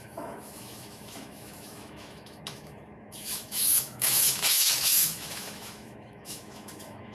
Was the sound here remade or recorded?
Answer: remade